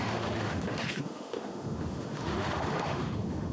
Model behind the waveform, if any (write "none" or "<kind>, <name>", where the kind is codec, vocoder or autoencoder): autoencoder, DAC-VAE